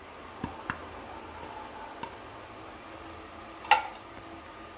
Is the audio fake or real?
real